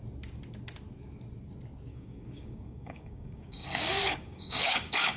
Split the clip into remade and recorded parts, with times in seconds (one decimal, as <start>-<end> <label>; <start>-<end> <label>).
0.0-1.9 recorded; 1.9-5.2 remade